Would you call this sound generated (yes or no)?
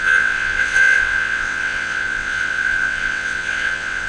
yes